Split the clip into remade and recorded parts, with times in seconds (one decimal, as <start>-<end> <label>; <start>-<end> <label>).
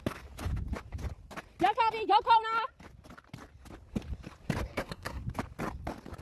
0.0-4.7 recorded; 4.7-5.2 remade; 5.2-6.2 recorded